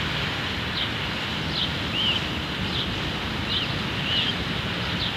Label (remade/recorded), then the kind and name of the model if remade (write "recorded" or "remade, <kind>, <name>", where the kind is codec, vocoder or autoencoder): recorded